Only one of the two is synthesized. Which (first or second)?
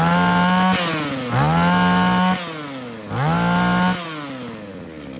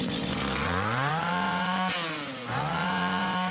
second